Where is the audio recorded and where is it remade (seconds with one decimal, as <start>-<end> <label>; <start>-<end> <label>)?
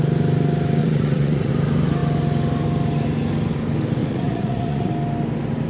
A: 0.0-0.8 recorded; 0.8-1.5 remade; 1.5-4.0 recorded; 4.0-4.9 remade; 4.9-5.7 recorded